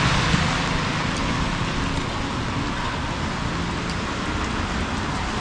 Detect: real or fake real